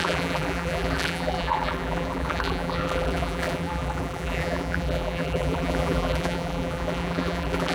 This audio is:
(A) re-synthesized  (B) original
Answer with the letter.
A